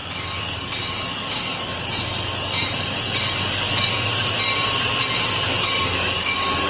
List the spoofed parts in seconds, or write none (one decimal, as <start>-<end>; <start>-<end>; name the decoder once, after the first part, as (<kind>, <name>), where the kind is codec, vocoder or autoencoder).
0.0-4.1 (codec, DAC); 5.7-6.7